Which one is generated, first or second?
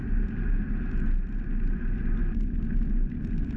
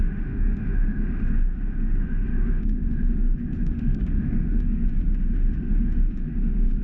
second